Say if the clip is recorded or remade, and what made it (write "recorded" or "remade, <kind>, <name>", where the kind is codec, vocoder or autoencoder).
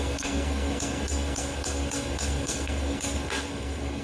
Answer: remade, codec, SNAC